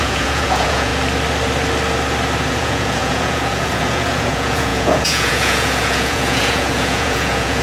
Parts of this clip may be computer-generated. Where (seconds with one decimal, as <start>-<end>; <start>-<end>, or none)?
0.0-0.9; 2.5-7.6